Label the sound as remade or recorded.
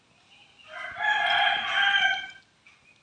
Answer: recorded